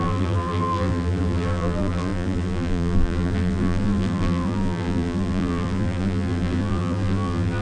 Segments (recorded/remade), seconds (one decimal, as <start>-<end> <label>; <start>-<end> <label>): 0.0-7.6 remade